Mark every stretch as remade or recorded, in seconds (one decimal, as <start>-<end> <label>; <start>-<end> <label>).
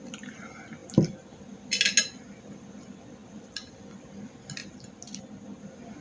0.0-6.0 recorded